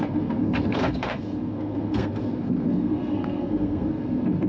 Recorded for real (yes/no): no